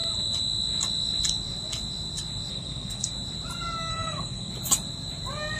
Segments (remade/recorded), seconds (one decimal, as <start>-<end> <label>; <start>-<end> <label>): 0.0-2.5 recorded; 2.5-3.1 remade; 3.1-3.9 recorded; 3.9-4.5 remade; 4.5-5.6 recorded